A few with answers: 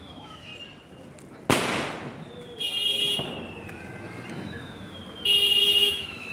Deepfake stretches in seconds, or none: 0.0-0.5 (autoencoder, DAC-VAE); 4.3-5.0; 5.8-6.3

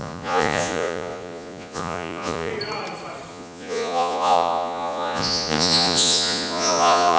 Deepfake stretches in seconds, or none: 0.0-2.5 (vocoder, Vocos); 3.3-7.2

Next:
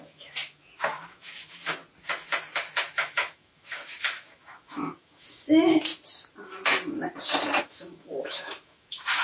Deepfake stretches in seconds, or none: 0.0-1.8 (autoencoder, DAC-VAE); 2.9-5.9; 7.6-9.2

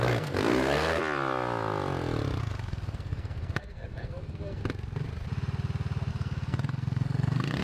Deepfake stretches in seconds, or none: 0.0-1.0 (codec, SNAC); 2.4-4.6; 6.1-7.6

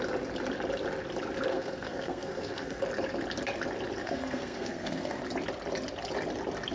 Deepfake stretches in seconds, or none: 1.5-2.8 (codec, SNAC); 4.0-5.2